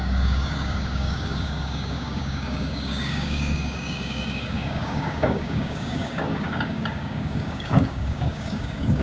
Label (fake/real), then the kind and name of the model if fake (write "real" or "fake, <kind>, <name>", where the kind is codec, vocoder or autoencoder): fake, codec, DAC